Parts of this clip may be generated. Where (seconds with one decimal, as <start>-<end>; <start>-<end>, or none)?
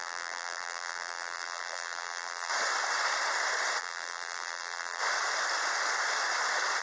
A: 0.0-2.5; 3.8-5.0